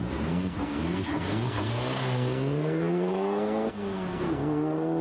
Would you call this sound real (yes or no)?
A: no